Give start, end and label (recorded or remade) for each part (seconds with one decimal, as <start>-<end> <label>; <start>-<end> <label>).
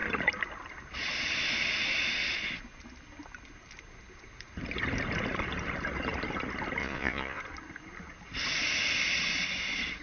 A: 0.0-6.8 recorded; 6.8-7.4 remade; 7.4-10.0 recorded